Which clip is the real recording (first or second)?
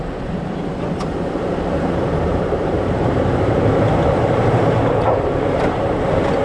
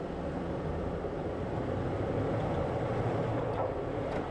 second